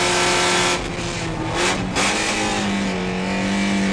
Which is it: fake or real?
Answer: real